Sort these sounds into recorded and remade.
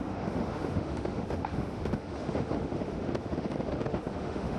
remade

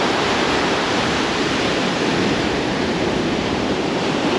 remade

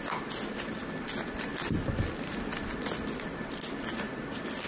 recorded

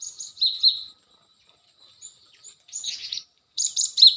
recorded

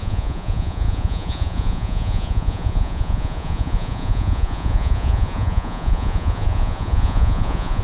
remade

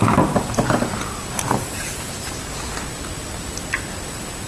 recorded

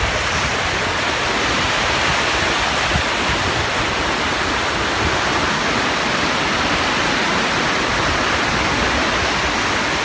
recorded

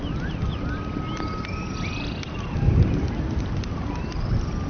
recorded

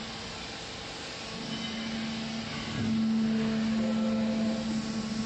recorded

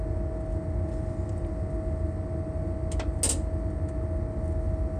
recorded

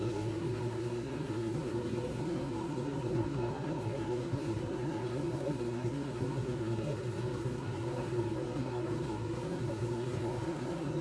remade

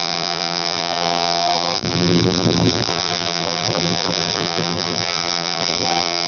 remade